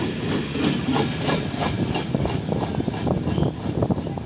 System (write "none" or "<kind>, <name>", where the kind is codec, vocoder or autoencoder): none